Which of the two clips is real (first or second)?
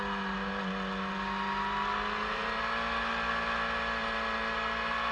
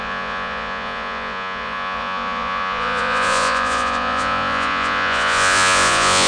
first